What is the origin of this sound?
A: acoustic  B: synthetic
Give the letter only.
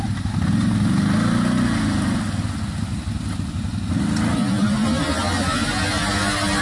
A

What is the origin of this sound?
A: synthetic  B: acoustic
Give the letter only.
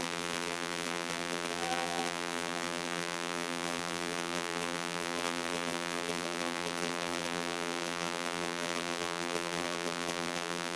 A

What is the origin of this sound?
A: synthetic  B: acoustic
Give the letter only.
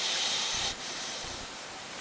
A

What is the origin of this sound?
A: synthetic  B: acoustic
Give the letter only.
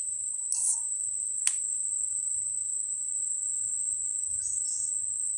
B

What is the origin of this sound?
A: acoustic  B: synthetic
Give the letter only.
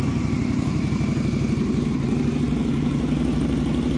B